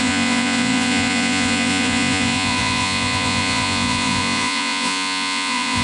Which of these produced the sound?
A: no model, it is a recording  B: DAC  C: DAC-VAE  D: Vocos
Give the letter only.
D